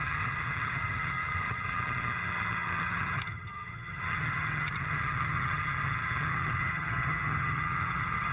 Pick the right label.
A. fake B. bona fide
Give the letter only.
A